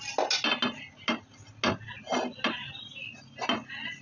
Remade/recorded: recorded